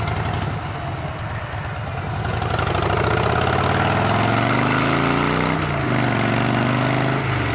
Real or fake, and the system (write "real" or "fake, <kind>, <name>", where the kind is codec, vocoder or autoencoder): real